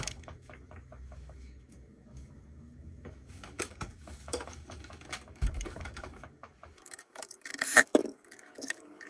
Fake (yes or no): yes